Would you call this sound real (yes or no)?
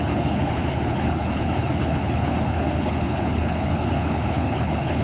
no